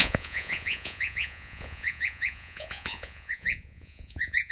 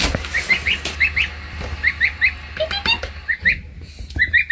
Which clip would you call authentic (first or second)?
second